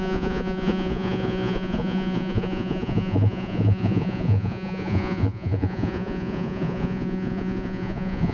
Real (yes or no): no